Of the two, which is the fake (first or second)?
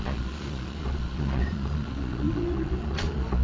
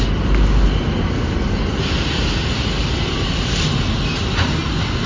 first